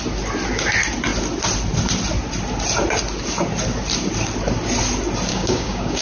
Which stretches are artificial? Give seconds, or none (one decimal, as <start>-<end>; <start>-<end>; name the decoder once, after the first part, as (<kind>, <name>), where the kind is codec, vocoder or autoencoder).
5.3-6.0 (codec, DAC)